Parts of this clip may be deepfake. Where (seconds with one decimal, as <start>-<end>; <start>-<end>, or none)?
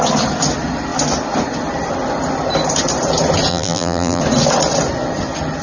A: 3.5-4.2